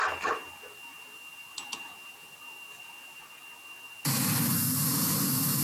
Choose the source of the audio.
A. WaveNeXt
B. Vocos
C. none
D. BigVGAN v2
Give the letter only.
C